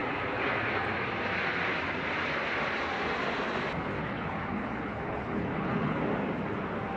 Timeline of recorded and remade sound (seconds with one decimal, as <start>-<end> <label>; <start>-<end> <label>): 0.0-4.0 recorded; 4.0-6.0 remade; 6.0-7.0 recorded